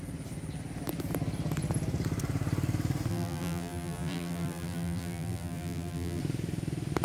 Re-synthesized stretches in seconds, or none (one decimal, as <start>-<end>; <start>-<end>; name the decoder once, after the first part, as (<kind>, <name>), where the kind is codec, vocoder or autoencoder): 3.1-6.2 (vocoder, BigVGAN v2)